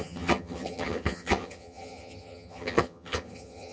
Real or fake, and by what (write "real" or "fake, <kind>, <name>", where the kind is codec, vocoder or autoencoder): fake, vocoder, HiFi-GAN